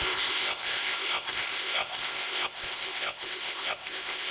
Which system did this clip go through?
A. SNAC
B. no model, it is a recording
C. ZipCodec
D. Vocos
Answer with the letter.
C